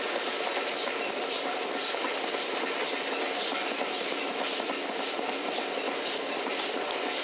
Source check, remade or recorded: recorded